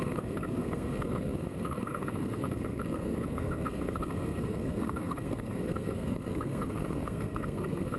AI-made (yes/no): yes